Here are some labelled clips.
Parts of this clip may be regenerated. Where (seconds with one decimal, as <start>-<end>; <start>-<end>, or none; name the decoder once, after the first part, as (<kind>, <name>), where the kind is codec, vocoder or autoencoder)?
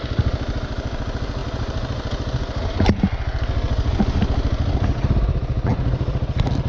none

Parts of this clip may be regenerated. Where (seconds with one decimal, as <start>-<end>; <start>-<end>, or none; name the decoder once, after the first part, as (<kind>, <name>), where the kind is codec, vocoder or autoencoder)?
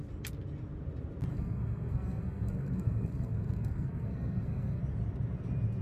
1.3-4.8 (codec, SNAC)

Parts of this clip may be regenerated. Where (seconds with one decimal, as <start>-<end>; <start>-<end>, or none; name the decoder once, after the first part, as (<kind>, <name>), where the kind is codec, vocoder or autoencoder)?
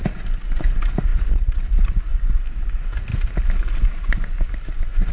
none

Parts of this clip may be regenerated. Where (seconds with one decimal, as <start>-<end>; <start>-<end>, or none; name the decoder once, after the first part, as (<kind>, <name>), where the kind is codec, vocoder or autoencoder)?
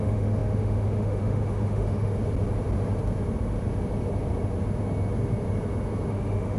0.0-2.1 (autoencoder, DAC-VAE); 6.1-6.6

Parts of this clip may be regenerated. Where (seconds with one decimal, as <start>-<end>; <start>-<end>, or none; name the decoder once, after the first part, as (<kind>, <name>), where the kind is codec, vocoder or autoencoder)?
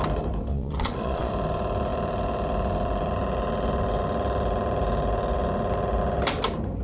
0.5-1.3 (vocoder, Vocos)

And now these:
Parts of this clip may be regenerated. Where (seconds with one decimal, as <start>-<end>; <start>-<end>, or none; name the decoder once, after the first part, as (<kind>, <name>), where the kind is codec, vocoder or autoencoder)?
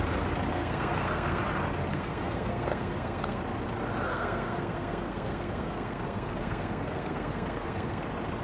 0.5-1.4 (codec, SNAC); 1.9-3.4; 4.1-8.0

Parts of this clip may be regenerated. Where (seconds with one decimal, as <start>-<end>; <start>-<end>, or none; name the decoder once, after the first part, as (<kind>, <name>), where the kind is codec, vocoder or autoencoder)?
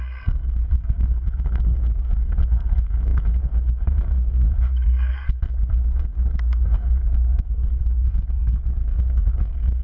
0.0-9.8 (codec, SNAC)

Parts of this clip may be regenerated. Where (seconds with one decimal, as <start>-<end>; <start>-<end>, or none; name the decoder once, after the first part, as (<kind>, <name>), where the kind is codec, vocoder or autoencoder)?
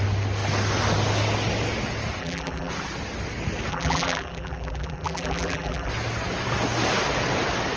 2.2-2.7 (vocoder, BigVGAN v2); 3.7-5.9